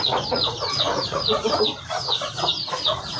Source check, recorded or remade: remade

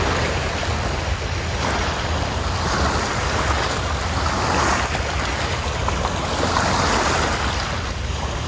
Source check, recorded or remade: recorded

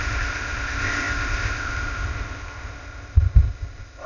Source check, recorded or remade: remade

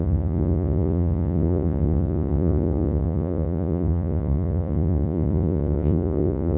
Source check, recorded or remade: remade